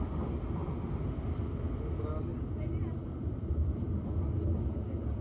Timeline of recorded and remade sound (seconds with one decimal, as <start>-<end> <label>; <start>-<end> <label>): 0.0-3.0 recorded; 3.0-3.7 remade; 3.7-5.2 recorded